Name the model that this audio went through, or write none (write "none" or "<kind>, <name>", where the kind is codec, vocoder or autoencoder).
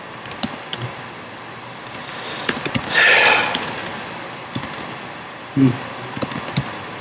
none